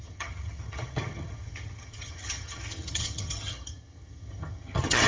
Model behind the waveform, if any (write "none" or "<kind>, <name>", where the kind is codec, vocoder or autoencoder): vocoder, HiFi-GAN